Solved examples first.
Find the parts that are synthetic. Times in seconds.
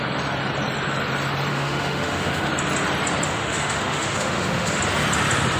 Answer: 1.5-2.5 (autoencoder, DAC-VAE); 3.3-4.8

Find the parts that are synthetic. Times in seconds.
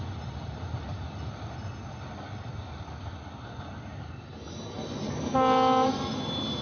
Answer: none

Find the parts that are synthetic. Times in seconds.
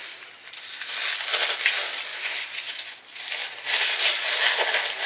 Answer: 2.1-3.0 (vocoder, Vocos)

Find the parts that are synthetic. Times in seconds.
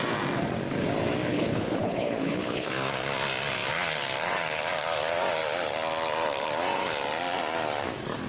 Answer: 1.3-2.7 (codec, HILCodec)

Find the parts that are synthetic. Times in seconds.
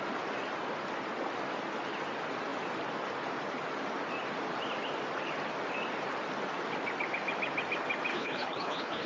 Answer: 8.1-9.1 (codec, HILCodec)